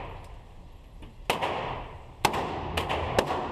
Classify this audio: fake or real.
real